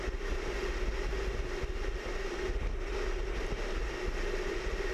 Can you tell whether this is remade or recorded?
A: recorded